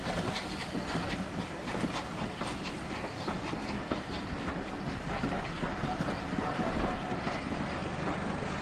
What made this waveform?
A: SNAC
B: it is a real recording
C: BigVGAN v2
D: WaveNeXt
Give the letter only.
B